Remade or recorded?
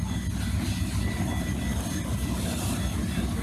recorded